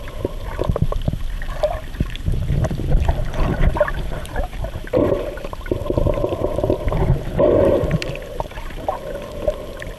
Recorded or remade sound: remade